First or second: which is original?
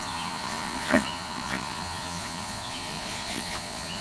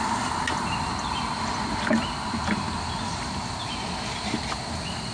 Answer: second